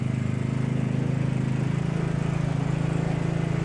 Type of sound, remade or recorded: recorded